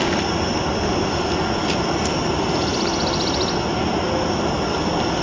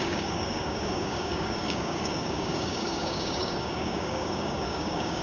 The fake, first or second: second